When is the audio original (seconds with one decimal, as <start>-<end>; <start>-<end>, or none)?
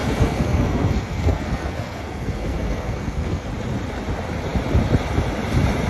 3.5-5.9